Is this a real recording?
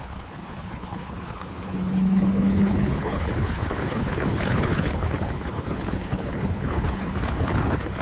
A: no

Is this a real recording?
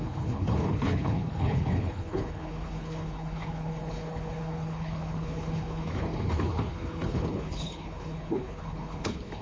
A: no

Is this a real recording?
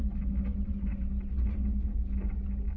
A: yes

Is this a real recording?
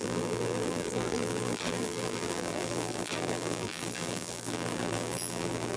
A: no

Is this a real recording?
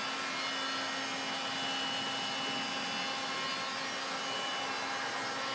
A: yes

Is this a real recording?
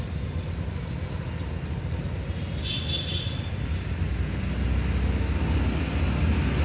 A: yes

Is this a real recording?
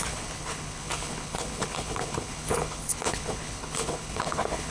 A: no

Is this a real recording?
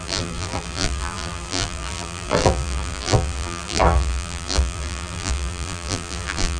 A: no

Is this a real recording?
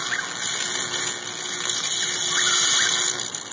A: yes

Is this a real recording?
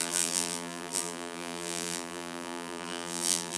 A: no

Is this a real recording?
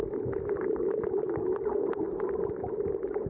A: yes